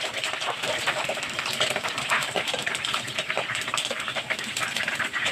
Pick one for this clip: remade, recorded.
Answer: remade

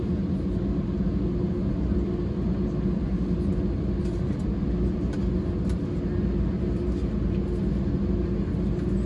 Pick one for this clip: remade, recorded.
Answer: recorded